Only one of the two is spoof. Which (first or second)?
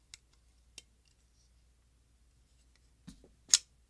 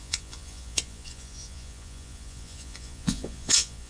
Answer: second